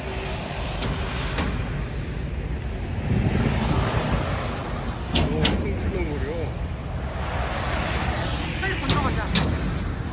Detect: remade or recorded recorded